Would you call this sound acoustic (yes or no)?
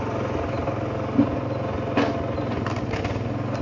yes